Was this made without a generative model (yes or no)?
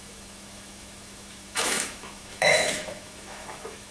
no